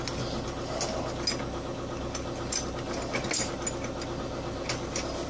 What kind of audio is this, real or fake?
real